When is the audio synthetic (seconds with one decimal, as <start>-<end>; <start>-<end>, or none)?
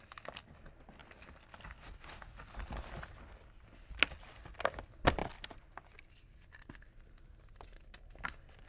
none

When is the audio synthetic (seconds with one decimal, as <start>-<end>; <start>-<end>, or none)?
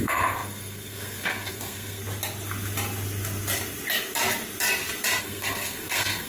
0.0-2.0; 5.2-6.3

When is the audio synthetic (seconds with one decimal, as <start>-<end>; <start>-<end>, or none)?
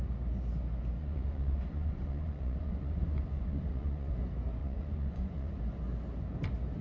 1.0-4.1; 4.6-5.6